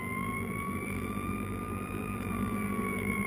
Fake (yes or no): yes